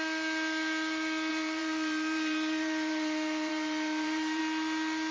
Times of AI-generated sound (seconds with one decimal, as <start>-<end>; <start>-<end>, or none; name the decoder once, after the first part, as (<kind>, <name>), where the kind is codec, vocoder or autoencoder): 1.3-4.4 (vocoder, BigVGAN v2)